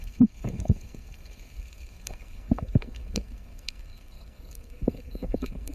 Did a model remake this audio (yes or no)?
yes